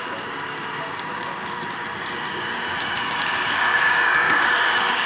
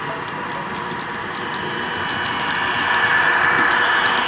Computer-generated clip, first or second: first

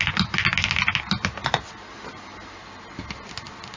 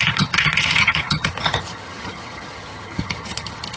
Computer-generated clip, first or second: second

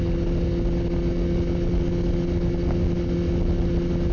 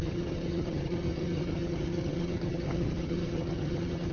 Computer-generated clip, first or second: second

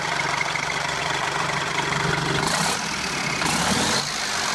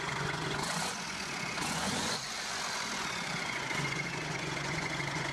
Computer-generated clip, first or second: second